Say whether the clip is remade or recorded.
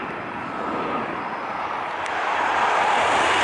recorded